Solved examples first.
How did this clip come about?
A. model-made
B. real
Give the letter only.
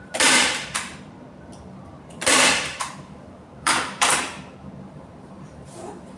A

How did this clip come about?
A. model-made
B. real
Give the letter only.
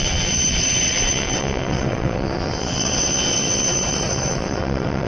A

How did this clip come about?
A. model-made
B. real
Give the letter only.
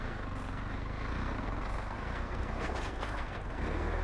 A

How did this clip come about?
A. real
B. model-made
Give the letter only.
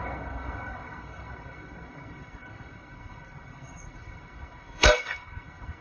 B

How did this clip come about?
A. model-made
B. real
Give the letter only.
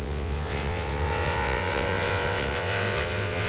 A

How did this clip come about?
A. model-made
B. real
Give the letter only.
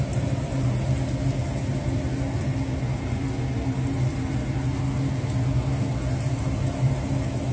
B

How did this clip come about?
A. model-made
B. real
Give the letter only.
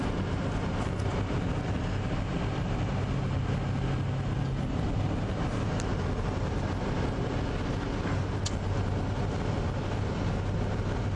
B